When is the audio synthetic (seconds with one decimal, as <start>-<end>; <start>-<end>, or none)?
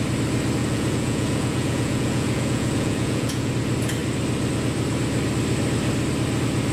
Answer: 0.6-3.5